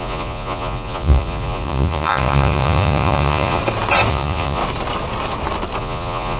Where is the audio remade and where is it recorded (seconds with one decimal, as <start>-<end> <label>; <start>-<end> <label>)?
0.0-3.6 remade; 3.6-4.1 recorded; 4.1-4.6 remade; 4.6-5.8 recorded; 5.8-6.4 remade